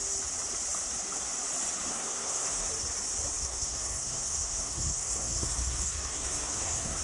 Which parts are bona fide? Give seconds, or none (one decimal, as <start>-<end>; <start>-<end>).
0.0-1.9; 2.7-3.4